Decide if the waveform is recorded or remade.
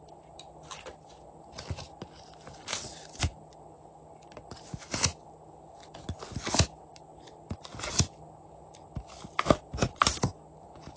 recorded